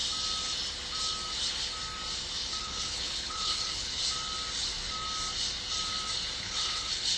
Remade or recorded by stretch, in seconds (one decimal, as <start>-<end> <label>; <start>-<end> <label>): 0.0-2.6 recorded; 2.6-4.0 remade; 4.0-6.4 recorded; 6.4-7.2 remade